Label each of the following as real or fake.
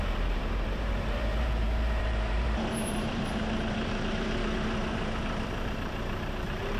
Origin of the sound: fake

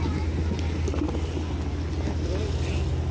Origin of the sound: real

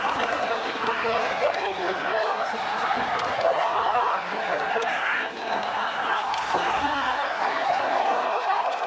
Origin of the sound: fake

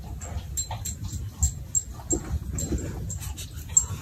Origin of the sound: real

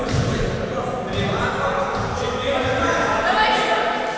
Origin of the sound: real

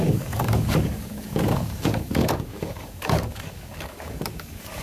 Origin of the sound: fake